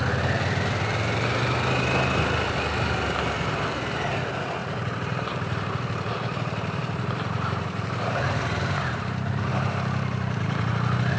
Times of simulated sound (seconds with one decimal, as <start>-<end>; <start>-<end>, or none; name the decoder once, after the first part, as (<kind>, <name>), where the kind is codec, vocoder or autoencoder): 4.6-5.7 (vocoder, BigVGAN v2); 6.8-10.7